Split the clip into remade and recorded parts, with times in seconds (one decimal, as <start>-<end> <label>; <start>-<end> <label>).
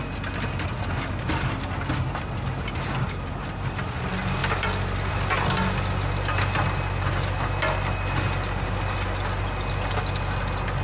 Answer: 0.0-10.8 recorded